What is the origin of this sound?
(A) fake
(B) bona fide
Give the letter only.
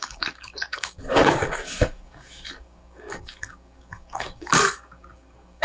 A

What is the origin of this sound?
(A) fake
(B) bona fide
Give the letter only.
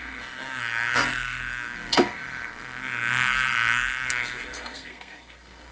A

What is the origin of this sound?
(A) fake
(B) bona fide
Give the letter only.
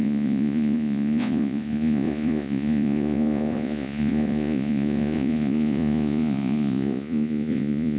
A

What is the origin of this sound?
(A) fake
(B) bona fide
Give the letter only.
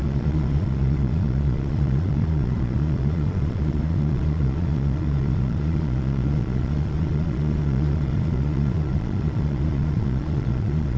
A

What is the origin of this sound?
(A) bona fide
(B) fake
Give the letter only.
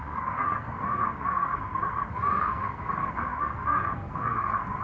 B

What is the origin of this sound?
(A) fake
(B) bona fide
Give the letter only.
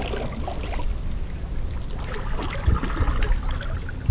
B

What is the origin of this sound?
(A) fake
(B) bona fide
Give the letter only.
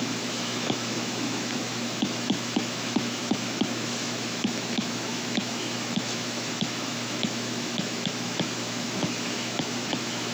A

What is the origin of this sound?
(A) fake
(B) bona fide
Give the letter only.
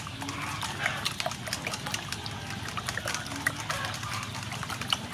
B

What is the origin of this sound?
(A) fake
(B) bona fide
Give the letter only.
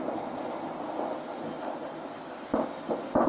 B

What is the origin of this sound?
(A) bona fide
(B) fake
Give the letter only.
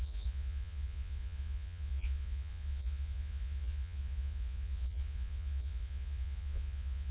B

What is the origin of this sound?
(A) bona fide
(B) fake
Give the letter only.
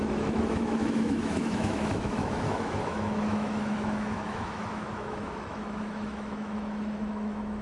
B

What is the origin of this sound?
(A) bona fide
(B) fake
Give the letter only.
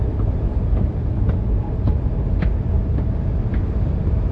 A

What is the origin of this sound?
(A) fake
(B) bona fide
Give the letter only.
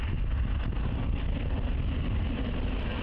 B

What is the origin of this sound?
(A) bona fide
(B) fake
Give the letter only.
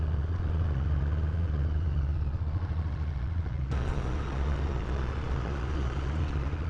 B